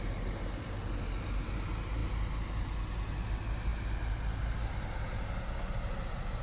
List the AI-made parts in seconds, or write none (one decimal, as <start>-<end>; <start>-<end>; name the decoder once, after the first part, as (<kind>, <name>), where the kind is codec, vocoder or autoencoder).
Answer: none